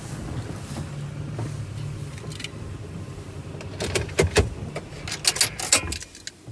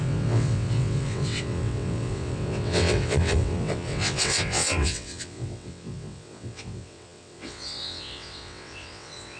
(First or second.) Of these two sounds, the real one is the first